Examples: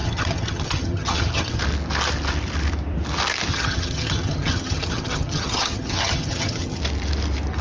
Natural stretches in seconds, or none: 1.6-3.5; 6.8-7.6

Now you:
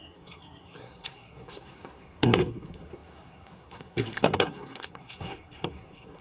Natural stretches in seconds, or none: none

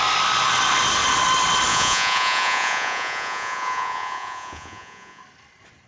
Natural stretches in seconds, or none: 0.0-1.7; 5.2-5.9

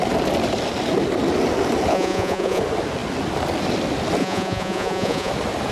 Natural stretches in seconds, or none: 0.0-1.9; 2.6-4.2; 5.3-5.7

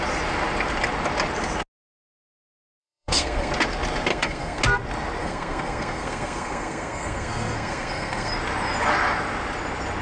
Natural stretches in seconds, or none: 0.0-2.8; 3.5-4.1; 4.6-5.2; 8.3-10.0